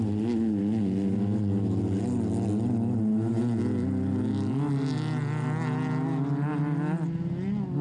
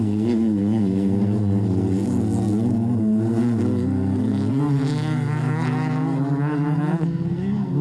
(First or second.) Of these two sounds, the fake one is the second